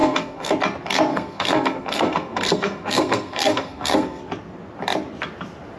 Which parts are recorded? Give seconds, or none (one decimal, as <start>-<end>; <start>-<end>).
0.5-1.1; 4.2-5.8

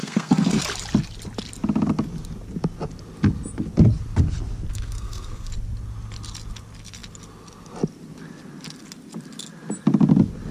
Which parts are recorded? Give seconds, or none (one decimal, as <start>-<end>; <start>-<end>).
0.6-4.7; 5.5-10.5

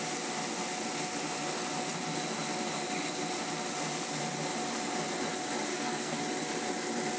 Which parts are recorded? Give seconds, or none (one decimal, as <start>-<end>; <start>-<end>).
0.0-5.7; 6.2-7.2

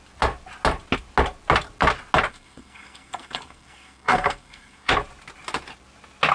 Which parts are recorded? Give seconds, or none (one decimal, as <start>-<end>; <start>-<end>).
0.0-2.3; 4.9-6.3

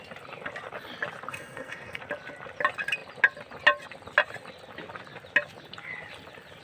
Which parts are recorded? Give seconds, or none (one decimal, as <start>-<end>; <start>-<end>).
0.0-1.3; 2.0-6.6

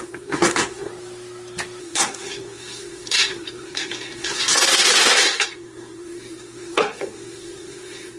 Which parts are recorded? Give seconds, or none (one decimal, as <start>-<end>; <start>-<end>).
0.9-1.8

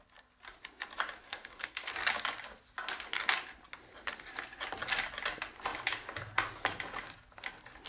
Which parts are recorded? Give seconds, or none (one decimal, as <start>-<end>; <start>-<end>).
0.0-1.2; 1.9-7.9